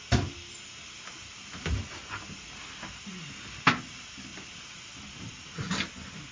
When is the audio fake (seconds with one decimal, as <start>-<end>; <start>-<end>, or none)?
none